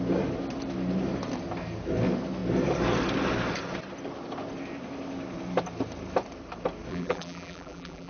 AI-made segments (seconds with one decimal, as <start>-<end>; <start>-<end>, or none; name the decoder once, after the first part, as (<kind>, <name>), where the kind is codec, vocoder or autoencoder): 6.9-8.1 (vocoder, BigVGAN v2)